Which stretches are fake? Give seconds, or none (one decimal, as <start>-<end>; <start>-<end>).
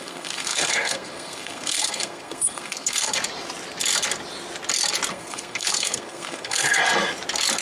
0.0-3.1; 5.1-6.8